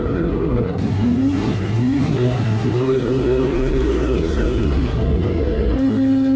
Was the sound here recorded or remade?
remade